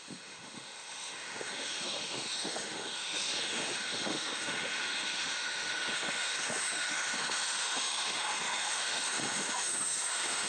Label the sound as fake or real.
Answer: fake